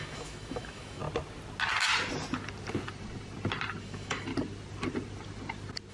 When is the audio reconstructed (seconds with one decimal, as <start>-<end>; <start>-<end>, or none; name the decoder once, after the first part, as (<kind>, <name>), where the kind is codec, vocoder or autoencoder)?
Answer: 0.0-1.0 (autoencoder, DAC-VAE); 3.8-4.3